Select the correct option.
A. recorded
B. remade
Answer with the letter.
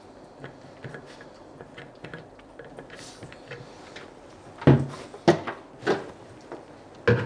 A